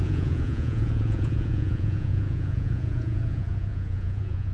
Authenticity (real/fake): fake